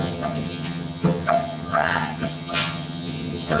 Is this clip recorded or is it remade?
remade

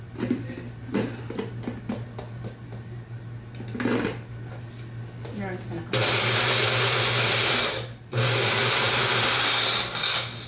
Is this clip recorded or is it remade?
recorded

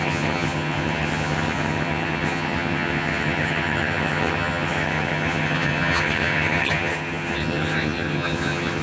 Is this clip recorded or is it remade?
remade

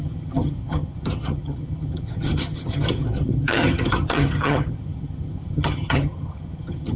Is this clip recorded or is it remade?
remade